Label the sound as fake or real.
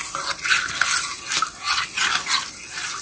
real